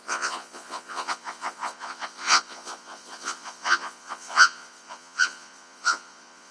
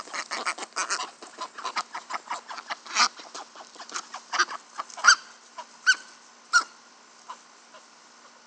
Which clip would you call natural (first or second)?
second